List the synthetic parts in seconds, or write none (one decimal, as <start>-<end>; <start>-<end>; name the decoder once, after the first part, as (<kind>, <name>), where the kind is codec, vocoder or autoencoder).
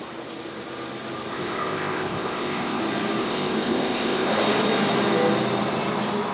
1.3-2.8 (codec, ZipCodec); 3.2-4.3